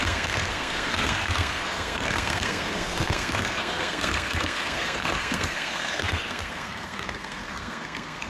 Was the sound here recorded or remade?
remade